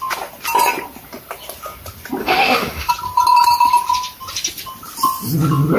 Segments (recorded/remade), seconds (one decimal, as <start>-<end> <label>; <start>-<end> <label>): 0.0-2.2 recorded; 2.2-2.9 remade; 2.9-5.8 recorded